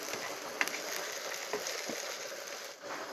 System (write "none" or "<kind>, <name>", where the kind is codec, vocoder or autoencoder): none